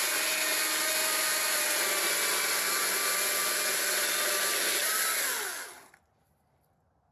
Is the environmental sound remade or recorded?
recorded